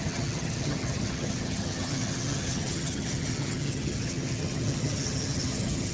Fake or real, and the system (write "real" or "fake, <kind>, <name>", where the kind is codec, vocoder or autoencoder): fake, vocoder, HiFi-GAN